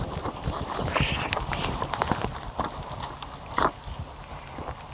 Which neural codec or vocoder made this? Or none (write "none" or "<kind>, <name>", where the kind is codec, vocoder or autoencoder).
none